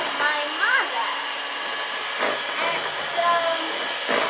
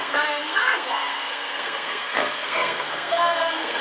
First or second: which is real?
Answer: first